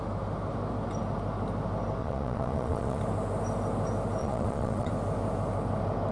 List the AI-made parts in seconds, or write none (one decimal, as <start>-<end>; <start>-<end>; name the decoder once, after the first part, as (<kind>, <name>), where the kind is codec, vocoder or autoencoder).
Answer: 2.0-3.0 (vocoder, Vocos); 4.2-4.9